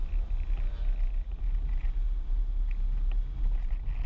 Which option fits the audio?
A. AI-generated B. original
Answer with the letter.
B